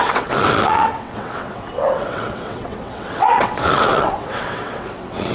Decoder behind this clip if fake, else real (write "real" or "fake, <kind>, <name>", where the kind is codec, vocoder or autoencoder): fake, vocoder, WaveNeXt